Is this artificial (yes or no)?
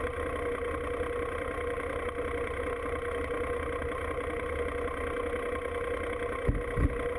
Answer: no